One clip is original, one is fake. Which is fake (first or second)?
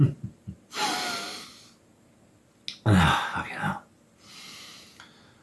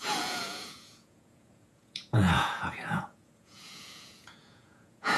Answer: second